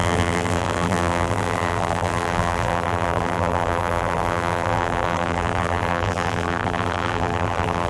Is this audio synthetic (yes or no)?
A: yes